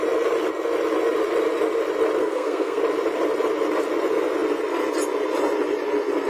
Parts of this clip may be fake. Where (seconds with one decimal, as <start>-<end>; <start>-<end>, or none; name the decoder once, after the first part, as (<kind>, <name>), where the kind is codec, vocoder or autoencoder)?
2.2-2.8 (codec, SNAC)